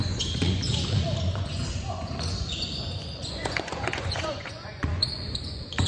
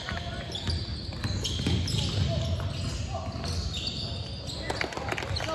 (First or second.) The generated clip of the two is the first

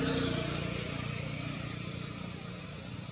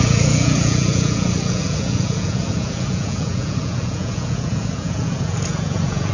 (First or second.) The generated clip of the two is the second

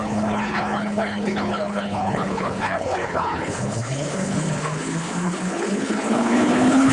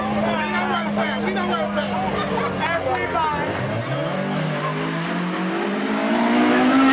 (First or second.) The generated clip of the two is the first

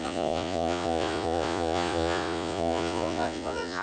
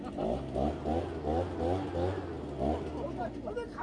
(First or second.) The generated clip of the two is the first